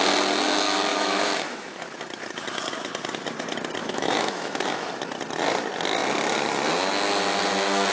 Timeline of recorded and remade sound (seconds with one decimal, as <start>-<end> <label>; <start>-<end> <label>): 0.0-0.9 recorded; 0.9-1.8 remade; 1.8-3.8 recorded; 3.8-4.9 remade; 4.9-7.9 recorded